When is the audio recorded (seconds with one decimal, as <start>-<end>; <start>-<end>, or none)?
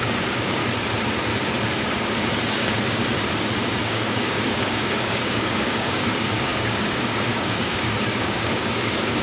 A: 0.6-2.5; 3.0-3.8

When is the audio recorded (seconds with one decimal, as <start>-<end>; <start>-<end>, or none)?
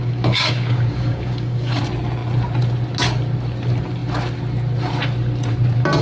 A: 1.8-6.0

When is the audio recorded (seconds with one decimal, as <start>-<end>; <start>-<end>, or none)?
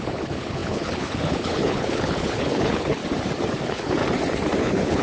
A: 3.0-3.6; 4.0-4.6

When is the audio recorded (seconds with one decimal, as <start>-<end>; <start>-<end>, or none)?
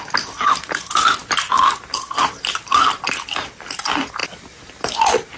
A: 0.0-5.4